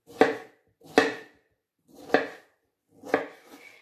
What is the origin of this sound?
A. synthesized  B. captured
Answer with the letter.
B